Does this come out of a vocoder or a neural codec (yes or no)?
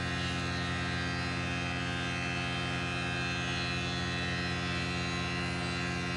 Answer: no